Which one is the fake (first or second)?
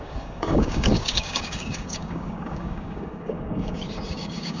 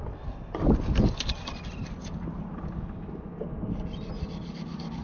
first